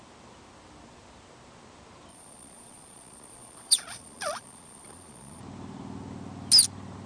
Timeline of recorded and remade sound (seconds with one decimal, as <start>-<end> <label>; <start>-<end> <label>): 0.0-2.1 recorded; 2.1-5.4 remade; 5.4-7.1 recorded